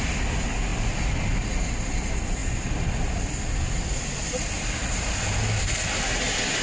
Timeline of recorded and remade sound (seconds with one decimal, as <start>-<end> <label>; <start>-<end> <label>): 0.0-6.6 recorded